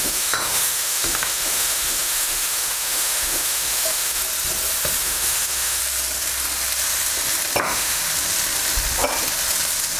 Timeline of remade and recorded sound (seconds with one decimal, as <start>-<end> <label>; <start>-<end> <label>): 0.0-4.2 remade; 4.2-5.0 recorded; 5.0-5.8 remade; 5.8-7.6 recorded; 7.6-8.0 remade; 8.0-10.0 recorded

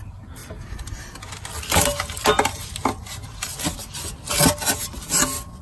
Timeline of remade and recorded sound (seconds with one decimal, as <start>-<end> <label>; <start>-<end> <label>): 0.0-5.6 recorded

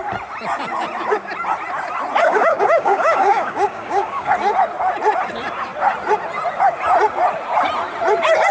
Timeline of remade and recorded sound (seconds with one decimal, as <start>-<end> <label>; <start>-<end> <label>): 0.0-2.2 recorded; 2.2-4.3 remade; 4.3-8.5 recorded

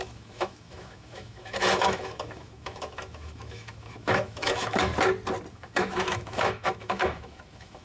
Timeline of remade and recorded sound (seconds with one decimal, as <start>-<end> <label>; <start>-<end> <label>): 0.0-4.9 remade; 4.9-5.5 recorded; 5.5-7.8 remade

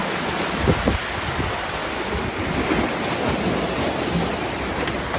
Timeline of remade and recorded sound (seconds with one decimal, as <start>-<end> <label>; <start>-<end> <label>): 0.0-5.2 recorded

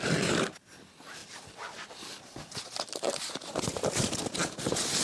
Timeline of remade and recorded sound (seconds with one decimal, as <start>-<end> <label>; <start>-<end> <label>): 0.0-1.2 recorded; 1.2-4.2 remade; 4.2-5.0 recorded

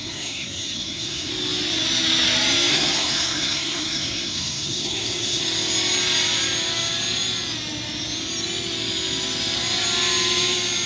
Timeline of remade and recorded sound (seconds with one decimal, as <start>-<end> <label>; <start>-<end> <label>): 0.0-1.3 remade; 1.3-2.7 recorded; 2.7-5.4 remade; 5.4-10.9 recorded

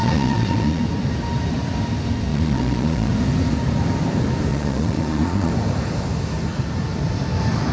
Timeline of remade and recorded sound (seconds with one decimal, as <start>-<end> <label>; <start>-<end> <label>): 0.0-0.8 remade; 0.8-2.3 recorded; 2.3-3.1 remade; 3.1-4.5 recorded; 4.5-5.5 remade; 5.5-7.7 recorded